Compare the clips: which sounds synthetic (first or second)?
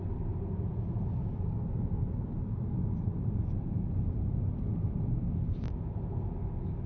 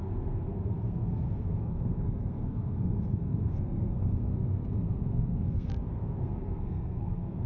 second